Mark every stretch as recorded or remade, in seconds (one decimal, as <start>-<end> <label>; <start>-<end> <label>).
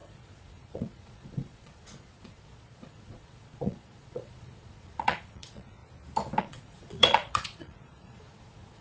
0.0-5.8 remade; 5.8-6.4 recorded; 6.4-8.8 remade